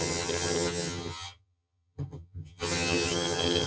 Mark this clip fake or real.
fake